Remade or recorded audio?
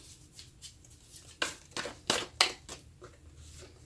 recorded